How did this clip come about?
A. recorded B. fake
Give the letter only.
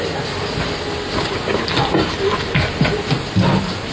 A